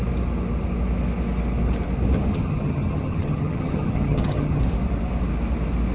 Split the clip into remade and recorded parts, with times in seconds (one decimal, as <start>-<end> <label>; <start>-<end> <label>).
0.0-2.3 recorded; 2.3-4.6 remade; 4.6-5.9 recorded